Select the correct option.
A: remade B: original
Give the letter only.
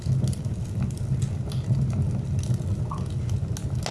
B